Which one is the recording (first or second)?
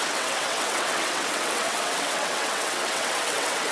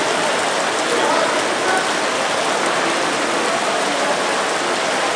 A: second